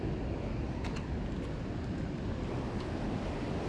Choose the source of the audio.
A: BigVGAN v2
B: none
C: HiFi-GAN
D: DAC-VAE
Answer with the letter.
B